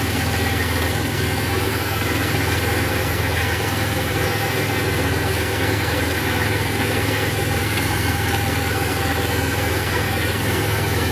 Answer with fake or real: fake